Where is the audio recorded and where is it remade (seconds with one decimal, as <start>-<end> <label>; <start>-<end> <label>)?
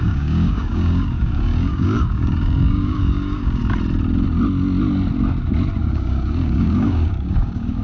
0.0-3.6 remade; 3.6-5.8 recorded; 5.8-7.8 remade